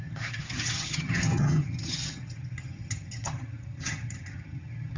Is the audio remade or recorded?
remade